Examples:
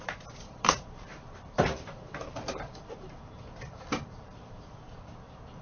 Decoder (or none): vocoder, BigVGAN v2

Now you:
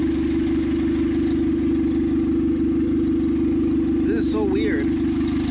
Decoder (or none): none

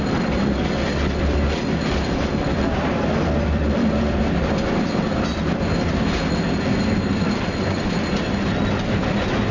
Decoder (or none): vocoder, BigVGAN v2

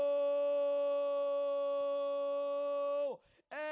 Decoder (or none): none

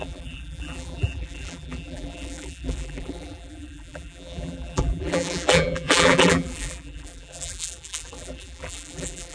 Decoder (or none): vocoder, BigVGAN v2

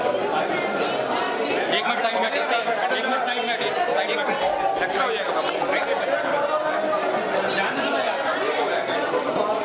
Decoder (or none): none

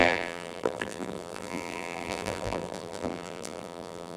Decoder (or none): vocoder, BigVGAN v2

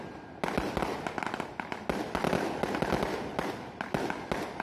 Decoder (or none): none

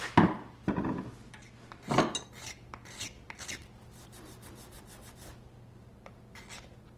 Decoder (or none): none